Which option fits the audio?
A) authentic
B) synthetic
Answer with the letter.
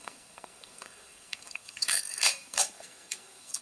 B